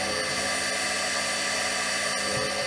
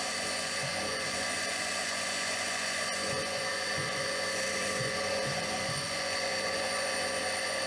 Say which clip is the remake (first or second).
second